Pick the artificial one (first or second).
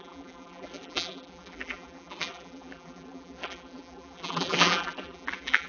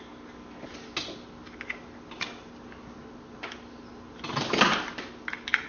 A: first